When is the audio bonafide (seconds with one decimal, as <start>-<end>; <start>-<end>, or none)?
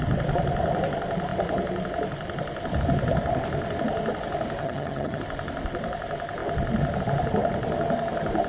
0.0-4.6; 5.2-8.5